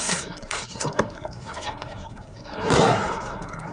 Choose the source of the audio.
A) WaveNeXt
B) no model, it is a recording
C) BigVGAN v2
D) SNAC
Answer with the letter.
D